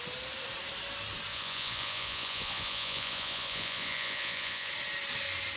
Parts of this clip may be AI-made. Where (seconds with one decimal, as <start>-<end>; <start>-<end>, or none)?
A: 1.3-4.7